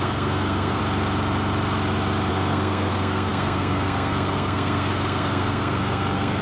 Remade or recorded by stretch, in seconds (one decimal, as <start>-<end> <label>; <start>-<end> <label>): 0.0-0.8 remade; 0.8-2.3 recorded; 2.3-6.4 remade

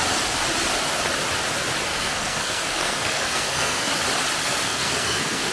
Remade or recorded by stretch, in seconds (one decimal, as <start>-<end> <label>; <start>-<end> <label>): 0.0-1.9 recorded; 1.9-3.9 remade; 3.9-4.4 recorded; 4.4-5.5 remade

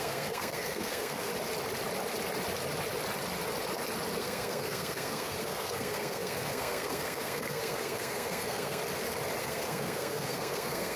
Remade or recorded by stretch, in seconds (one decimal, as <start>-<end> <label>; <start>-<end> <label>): 0.0-1.3 remade; 1.3-4.2 recorded; 4.2-8.8 remade; 8.8-9.4 recorded; 9.4-11.0 remade

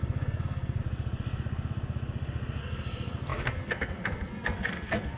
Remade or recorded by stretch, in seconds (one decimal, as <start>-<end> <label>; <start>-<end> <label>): 0.0-0.8 remade; 0.8-2.6 recorded; 2.6-5.2 remade

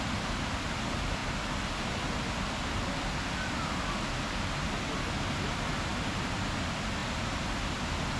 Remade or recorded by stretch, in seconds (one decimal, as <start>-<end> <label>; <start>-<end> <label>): 0.0-8.2 recorded